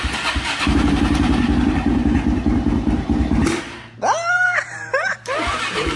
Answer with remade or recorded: remade